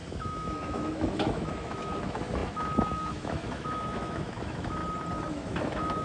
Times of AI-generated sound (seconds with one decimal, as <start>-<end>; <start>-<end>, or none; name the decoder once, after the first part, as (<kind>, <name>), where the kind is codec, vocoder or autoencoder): 0.0-4.8 (autoencoder, DAC-VAE); 5.3-6.0